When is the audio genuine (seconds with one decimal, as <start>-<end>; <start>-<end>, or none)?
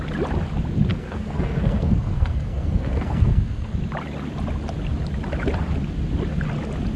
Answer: 0.0-0.9; 3.7-7.0